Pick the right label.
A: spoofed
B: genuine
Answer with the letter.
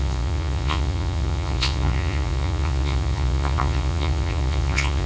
A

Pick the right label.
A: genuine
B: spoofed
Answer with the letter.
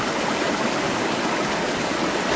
A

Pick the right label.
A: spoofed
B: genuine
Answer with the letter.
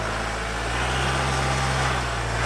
B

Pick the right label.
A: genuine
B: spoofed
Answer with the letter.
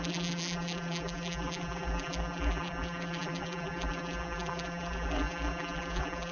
B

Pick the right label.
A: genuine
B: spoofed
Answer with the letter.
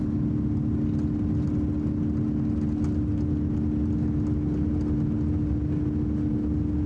A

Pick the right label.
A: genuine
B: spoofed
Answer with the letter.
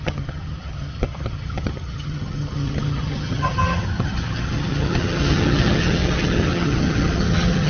B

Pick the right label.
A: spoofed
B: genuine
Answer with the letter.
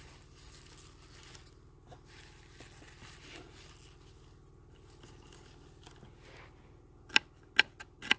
B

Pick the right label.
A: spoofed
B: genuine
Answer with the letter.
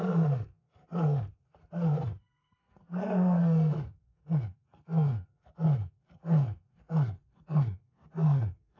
A